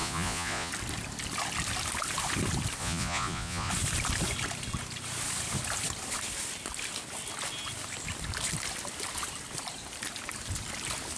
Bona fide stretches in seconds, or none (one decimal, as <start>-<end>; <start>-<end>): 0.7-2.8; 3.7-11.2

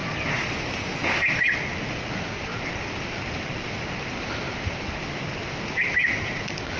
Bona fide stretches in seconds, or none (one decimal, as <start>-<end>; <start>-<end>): 0.0-6.8

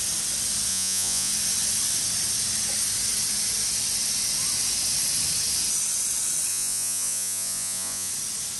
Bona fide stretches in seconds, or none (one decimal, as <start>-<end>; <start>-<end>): 0.0-0.7; 1.3-6.5; 8.1-8.6

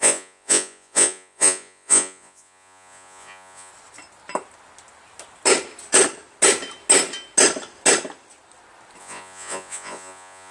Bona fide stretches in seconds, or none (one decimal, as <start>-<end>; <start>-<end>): 3.7-9.0